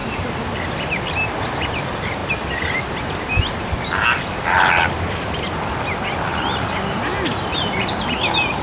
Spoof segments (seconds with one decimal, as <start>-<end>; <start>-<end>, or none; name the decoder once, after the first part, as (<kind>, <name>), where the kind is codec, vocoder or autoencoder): 0.0-0.5 (vocoder, BigVGAN v2); 2.2-2.8; 7.1-7.9